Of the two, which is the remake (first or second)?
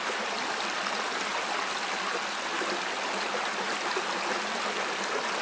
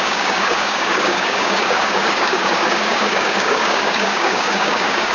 second